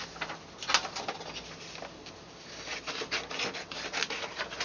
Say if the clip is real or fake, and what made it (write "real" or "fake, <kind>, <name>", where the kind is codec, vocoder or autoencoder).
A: real